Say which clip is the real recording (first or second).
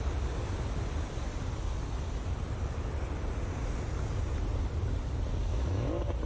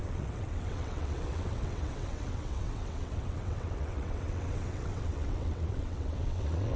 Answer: first